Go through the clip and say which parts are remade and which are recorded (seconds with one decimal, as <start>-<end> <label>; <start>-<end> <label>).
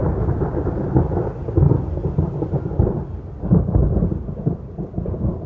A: 0.0-5.5 recorded